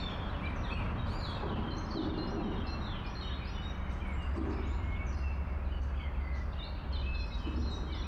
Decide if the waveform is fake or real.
real